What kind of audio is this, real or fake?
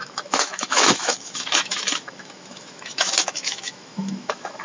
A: fake